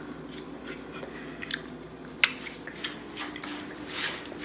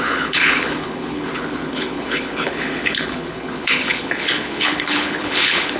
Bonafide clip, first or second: first